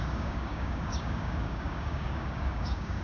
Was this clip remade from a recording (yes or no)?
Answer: yes